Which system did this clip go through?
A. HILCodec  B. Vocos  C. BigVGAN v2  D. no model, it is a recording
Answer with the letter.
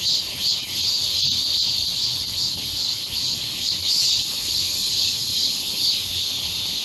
A